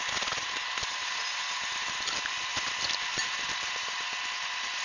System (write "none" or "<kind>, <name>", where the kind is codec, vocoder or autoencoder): none